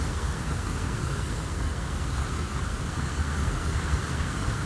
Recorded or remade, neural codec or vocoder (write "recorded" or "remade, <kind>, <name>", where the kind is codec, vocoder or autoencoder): remade, codec, SNAC